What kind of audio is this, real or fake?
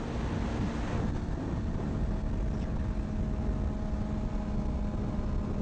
real